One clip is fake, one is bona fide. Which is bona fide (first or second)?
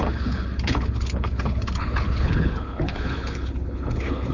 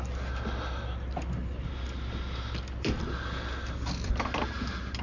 second